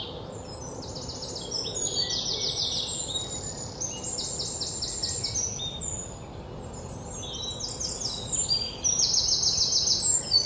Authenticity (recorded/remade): recorded